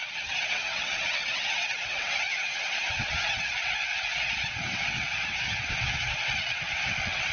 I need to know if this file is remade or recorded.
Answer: remade